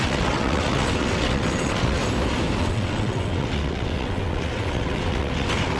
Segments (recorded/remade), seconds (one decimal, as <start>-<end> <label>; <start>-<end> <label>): 0.0-2.0 remade; 2.0-2.6 recorded; 2.6-5.8 remade